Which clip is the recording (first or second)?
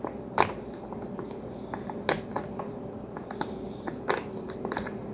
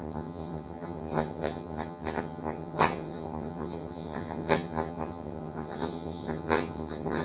first